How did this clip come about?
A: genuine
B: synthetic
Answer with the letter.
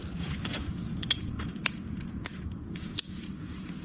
B